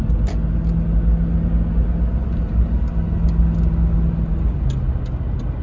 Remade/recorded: recorded